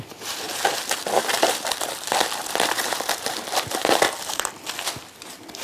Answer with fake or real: fake